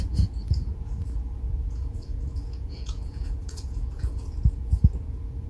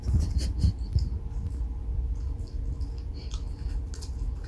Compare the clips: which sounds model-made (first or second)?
first